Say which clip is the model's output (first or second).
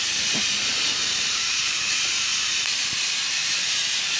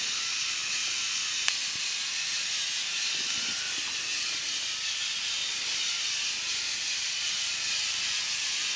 first